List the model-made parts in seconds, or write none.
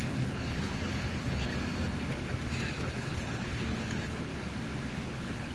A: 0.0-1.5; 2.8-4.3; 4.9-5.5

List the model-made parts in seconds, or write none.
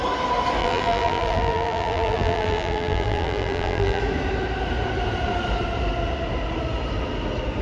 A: 0.6-4.0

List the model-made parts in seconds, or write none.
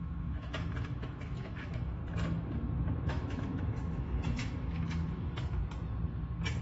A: 0.0-2.0; 3.1-5.6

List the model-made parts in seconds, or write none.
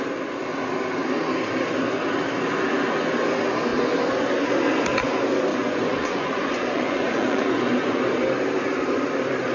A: 5.5-8.0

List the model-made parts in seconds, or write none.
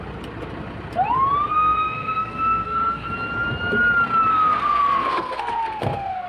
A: 1.5-3.1; 4.3-6.3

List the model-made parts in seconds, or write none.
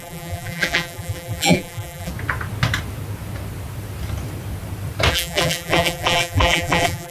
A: 0.0-2.1; 5.1-7.1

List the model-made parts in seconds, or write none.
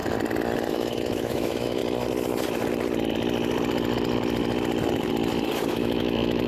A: 0.7-1.8; 5.7-6.5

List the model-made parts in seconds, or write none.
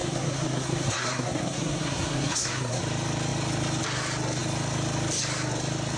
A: 0.0-2.8